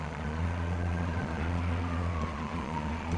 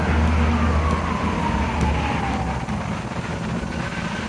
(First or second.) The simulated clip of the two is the first